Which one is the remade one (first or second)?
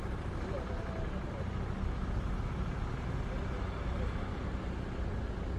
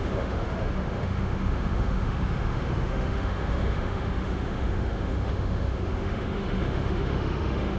second